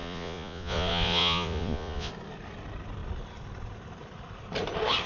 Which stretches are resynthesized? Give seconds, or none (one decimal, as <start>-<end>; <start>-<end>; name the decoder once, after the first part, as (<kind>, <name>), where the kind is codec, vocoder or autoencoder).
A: 0.0-2.1 (vocoder, Vocos)